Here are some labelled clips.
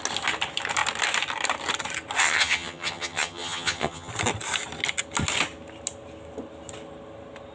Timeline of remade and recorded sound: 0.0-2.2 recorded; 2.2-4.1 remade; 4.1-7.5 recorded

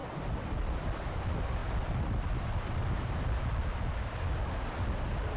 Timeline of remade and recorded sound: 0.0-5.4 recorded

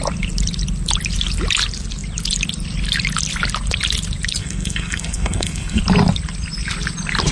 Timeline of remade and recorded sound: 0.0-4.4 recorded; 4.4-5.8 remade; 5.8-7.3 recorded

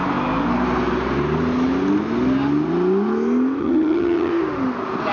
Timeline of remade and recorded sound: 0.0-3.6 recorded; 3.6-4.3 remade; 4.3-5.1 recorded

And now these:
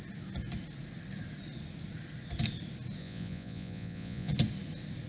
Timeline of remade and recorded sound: 0.0-3.0 recorded; 3.0-4.3 remade; 4.3-5.1 recorded

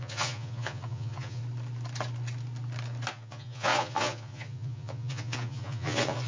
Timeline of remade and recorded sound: 0.0-1.4 remade; 1.4-3.1 recorded; 3.1-6.3 remade

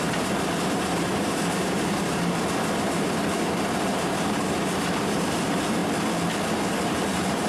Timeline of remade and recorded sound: 0.0-5.8 remade; 5.8-6.7 recorded; 6.7-7.5 remade